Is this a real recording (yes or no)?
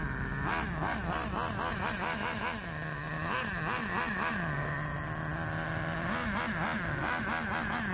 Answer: yes